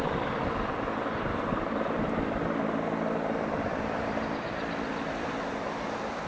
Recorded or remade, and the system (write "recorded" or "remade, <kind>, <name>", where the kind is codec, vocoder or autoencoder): remade, vocoder, BigVGAN v2